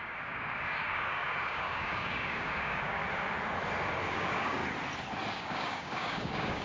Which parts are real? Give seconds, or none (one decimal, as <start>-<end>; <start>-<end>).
3.0-4.1; 4.6-5.3